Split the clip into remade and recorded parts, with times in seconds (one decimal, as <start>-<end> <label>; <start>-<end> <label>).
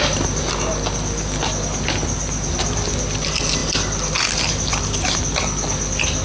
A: 0.0-6.2 recorded